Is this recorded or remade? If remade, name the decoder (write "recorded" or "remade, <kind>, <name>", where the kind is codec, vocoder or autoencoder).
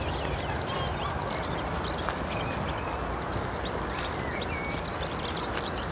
recorded